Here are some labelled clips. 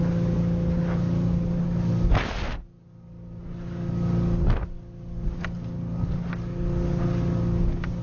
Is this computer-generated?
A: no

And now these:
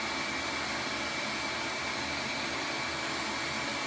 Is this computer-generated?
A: no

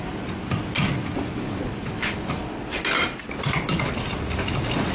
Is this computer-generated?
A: no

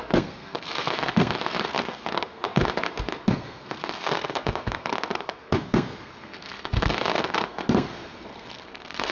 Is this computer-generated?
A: yes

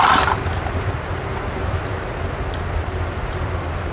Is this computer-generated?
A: no